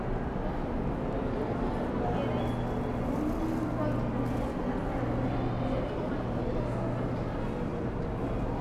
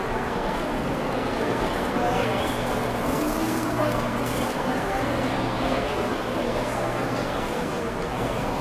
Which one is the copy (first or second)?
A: second